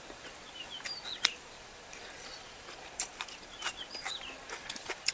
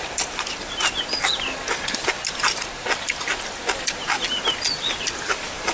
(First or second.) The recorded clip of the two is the second